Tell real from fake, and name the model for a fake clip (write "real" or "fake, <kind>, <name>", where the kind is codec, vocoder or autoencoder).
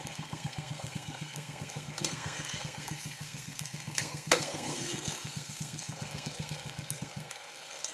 fake, codec, SNAC